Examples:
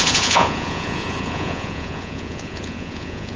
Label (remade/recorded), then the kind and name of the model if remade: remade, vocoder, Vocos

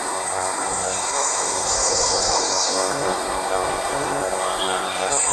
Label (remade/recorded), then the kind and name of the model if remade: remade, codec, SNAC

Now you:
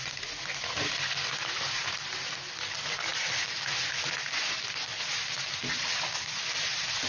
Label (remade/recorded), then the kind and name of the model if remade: recorded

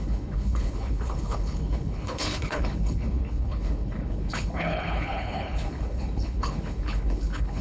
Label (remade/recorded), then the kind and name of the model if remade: remade, codec, HILCodec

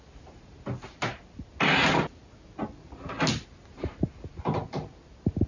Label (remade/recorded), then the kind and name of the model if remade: recorded